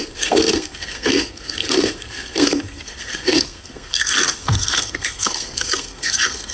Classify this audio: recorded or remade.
remade